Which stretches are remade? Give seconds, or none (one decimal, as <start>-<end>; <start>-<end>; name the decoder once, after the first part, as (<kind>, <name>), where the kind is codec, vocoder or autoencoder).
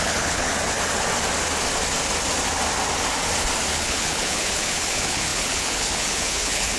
0.0-0.5 (codec, HILCodec); 3.7-6.8